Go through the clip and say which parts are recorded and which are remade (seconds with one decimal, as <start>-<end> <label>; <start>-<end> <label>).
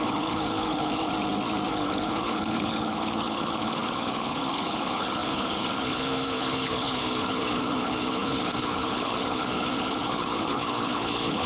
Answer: 0.0-1.1 remade; 1.1-1.7 recorded; 1.7-11.5 remade